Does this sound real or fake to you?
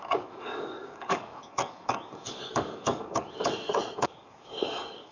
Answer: fake